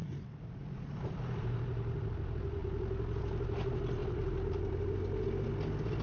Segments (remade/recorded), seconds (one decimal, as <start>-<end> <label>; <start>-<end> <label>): 0.0-2.1 remade; 2.1-4.0 recorded; 4.0-4.7 remade; 4.7-6.0 recorded